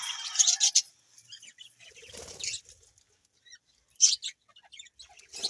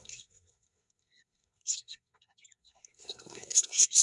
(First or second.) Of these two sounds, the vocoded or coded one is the second